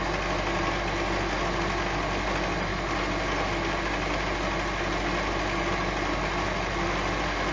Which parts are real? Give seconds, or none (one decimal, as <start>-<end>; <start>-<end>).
0.0-7.5